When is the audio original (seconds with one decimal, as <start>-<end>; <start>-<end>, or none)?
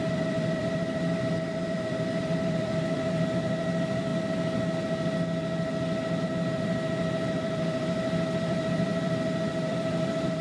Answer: 4.1-6.2